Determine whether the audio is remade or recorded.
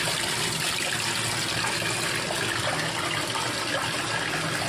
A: recorded